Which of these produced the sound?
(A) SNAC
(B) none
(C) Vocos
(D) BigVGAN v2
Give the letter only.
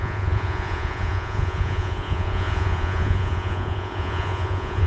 C